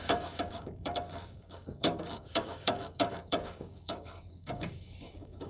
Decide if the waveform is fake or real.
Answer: fake